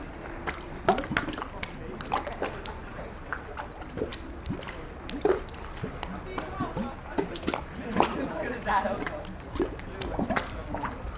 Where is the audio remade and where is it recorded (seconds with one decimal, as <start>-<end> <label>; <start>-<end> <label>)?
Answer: 0.0-8.1 recorded; 8.1-8.7 remade; 8.7-11.2 recorded